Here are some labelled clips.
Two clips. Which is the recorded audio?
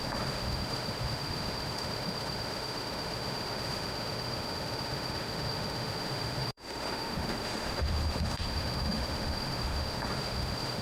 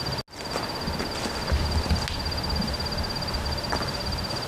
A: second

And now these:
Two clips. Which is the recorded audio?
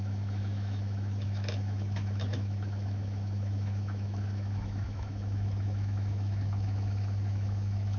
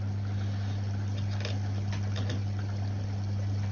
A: second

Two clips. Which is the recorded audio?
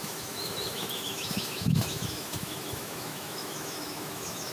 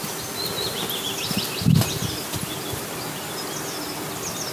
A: second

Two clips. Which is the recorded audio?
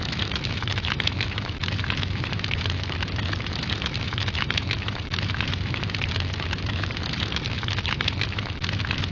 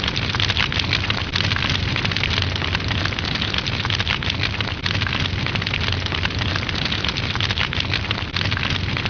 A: second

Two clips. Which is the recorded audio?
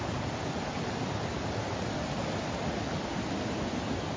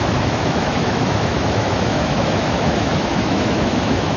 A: first